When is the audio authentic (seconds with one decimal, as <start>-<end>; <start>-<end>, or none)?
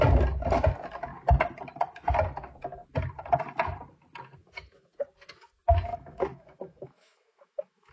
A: 0.0-4.4; 4.9-5.9